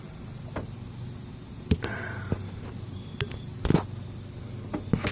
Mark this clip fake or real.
real